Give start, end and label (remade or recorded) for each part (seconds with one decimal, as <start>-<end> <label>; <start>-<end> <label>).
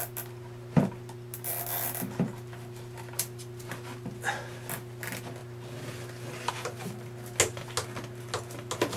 0.0-9.0 recorded